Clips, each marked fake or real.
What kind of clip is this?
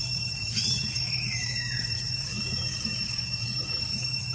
fake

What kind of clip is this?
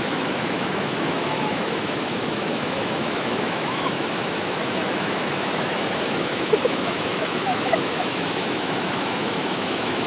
fake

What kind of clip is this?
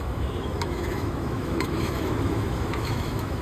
fake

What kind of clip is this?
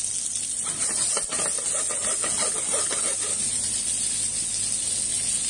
real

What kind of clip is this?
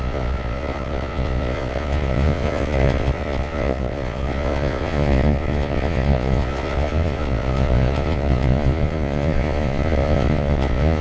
fake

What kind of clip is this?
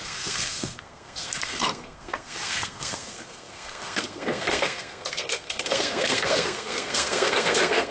fake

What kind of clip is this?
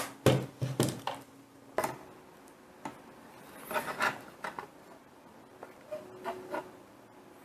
real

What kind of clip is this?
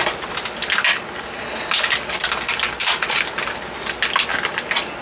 real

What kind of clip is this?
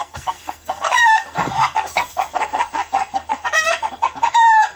fake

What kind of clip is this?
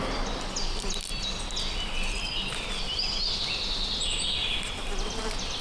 real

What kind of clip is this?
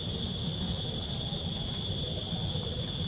real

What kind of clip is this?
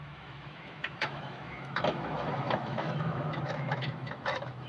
fake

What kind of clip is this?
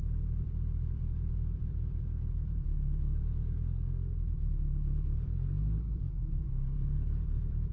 fake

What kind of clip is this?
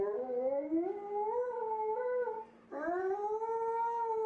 real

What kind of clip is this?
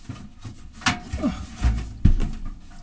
real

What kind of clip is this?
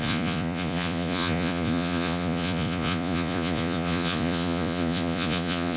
fake